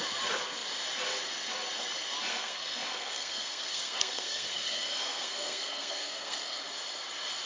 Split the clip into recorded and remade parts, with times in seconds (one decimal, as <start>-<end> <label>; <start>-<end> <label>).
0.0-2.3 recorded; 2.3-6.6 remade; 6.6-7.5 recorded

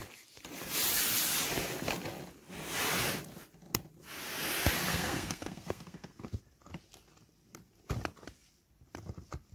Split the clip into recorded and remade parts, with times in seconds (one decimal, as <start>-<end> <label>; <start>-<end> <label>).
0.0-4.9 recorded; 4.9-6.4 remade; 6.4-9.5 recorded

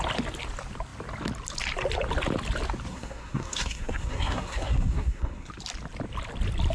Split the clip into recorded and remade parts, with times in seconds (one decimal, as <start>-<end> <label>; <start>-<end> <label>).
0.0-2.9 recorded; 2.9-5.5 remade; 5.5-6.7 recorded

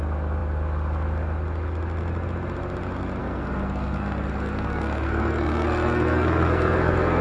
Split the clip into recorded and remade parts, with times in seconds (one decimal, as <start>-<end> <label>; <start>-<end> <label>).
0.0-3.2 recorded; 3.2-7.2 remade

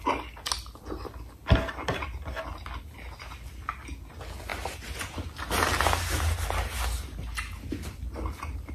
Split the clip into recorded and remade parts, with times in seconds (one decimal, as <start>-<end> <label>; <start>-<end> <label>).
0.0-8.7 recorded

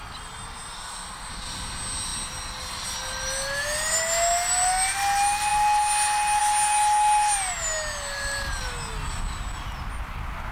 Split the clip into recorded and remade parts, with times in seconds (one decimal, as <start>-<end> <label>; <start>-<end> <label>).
0.0-10.5 recorded